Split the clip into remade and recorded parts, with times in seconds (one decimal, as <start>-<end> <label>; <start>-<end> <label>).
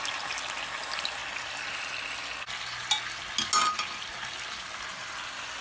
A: 0.0-5.6 recorded